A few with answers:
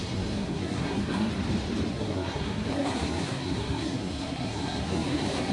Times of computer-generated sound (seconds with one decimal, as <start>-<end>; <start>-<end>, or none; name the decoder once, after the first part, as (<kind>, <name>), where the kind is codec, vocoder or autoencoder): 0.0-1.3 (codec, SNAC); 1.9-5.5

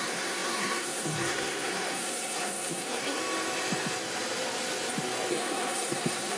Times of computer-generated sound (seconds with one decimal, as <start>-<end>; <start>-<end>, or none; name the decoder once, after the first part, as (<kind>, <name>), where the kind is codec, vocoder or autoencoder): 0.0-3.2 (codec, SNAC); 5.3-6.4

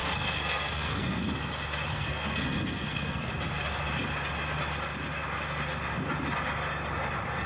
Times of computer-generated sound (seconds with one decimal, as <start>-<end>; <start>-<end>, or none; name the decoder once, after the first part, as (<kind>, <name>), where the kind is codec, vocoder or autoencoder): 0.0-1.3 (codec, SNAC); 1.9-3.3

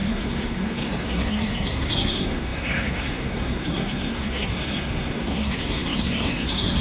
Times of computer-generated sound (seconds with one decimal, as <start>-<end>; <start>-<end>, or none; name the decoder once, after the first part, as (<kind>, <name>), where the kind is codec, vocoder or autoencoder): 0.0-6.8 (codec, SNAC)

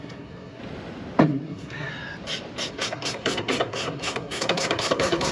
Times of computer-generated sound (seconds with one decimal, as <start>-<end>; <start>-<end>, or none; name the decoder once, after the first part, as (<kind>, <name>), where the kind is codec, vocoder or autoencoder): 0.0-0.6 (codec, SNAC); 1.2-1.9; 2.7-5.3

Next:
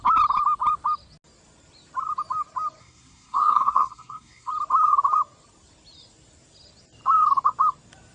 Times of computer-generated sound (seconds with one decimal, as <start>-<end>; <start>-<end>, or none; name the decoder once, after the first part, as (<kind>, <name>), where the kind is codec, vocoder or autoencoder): 2.8-4.5 (codec, SNAC)